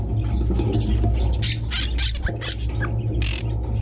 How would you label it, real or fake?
real